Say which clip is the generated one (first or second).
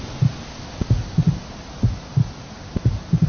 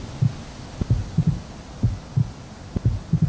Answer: first